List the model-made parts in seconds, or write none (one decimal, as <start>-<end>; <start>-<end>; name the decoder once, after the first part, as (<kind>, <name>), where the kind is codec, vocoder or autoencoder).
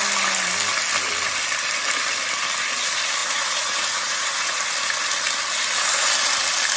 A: 3.2-4.6 (vocoder, Vocos)